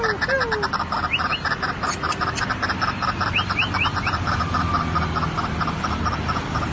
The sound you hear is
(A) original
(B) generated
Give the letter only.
A